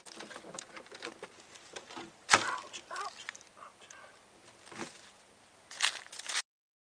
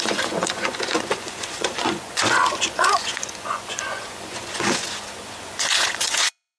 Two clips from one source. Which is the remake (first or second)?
second